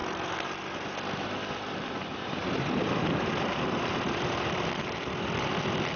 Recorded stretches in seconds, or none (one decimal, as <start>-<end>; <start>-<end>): 1.3-2.0; 5.6-6.0